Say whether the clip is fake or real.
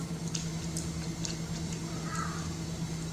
fake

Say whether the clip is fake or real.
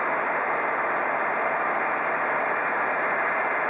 real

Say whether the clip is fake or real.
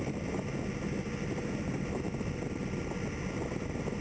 real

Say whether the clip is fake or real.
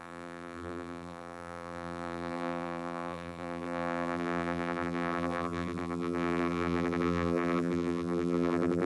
fake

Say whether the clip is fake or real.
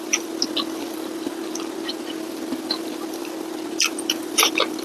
fake